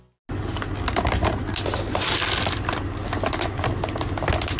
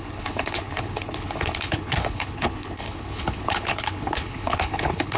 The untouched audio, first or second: first